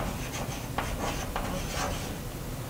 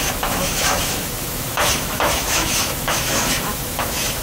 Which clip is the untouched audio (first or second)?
first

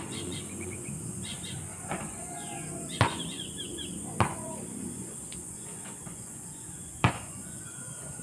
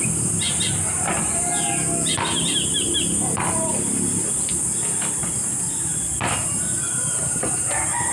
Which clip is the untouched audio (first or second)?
second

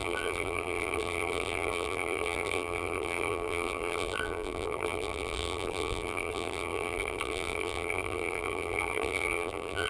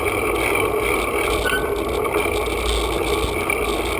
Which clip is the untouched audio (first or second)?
second